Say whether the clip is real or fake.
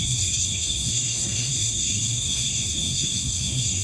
fake